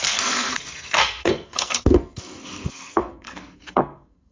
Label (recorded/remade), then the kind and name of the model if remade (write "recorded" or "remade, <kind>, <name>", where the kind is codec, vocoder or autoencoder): remade, codec, SNAC